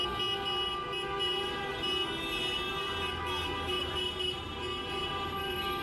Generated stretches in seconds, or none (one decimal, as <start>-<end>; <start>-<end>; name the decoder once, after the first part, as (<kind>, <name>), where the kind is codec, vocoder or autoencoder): none